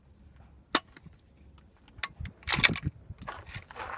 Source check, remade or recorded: recorded